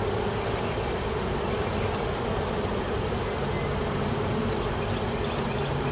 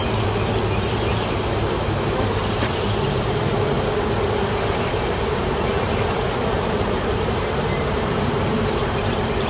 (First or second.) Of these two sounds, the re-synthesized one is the second